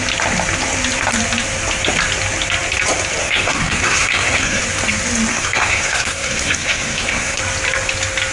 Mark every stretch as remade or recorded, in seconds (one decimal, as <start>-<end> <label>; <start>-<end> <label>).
0.0-3.2 recorded; 3.2-4.6 remade; 4.6-5.3 recorded; 5.3-7.4 remade; 7.4-8.3 recorded